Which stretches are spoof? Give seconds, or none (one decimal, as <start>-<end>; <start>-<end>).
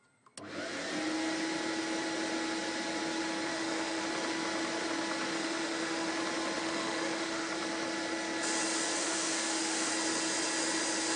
3.5-4.0; 5.3-6.1; 6.6-7.5; 9.0-9.9